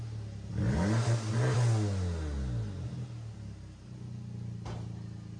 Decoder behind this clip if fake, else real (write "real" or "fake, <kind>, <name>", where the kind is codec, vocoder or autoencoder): real